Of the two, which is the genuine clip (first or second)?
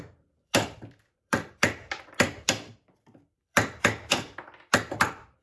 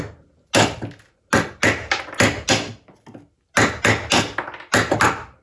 second